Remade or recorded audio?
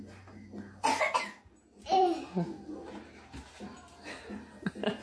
recorded